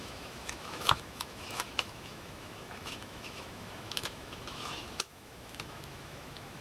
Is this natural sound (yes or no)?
no